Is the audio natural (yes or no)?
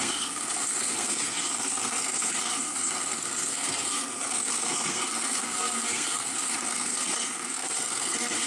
no